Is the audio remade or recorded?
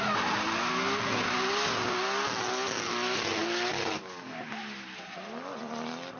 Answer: recorded